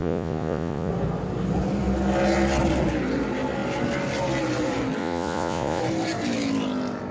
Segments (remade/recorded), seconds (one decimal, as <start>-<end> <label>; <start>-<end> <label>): 0.0-0.9 remade; 0.9-5.0 recorded; 5.0-5.8 remade; 5.8-7.1 recorded